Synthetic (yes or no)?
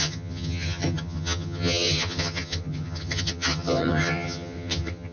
yes